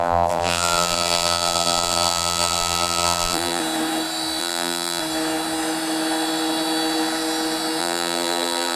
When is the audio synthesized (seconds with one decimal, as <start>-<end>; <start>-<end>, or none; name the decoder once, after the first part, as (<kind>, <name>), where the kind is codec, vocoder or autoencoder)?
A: 0.0-3.6 (vocoder, BigVGAN v2); 4.4-5.0; 7.8-8.8